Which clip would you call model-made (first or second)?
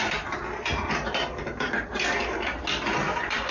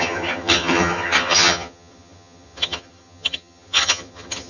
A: second